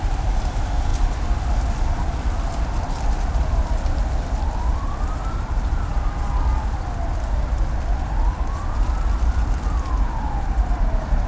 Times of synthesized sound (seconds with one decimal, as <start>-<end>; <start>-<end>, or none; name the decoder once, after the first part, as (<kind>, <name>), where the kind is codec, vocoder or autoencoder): 0.0-0.9 (vocoder, BigVGAN v2); 3.3-5.9; 7.9-11.3